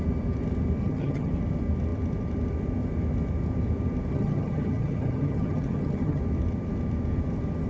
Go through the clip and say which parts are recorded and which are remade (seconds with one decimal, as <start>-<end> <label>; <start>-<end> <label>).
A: 0.0-0.8 recorded; 0.8-1.3 remade; 1.3-4.1 recorded; 4.1-6.2 remade; 6.2-7.7 recorded